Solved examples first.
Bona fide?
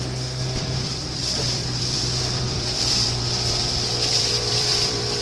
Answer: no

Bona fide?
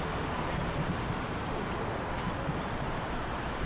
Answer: yes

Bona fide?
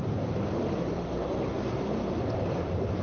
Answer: no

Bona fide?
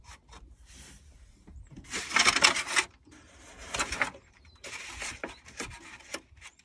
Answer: no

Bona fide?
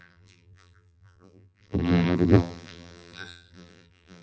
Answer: no